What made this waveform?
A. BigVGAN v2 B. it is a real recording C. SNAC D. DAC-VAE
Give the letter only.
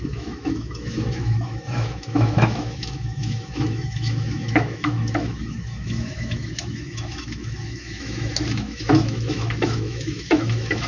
D